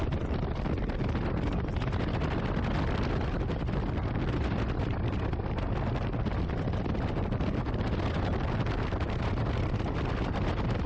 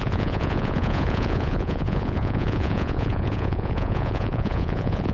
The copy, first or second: second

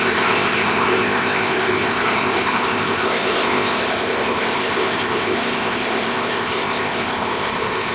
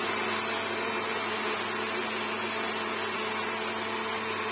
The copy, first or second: first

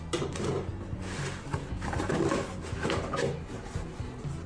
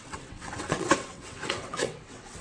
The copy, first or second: second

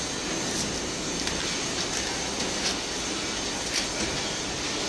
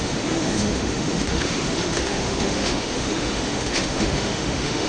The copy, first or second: second